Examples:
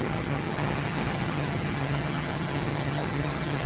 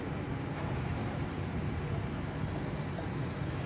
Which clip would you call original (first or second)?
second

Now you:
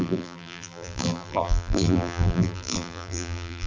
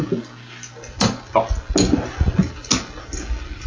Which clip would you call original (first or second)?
second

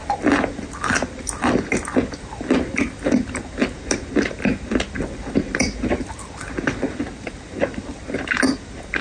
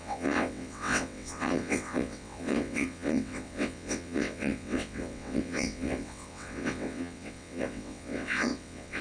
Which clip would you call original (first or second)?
first